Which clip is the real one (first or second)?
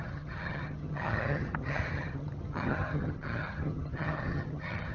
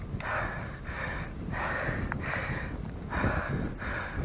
second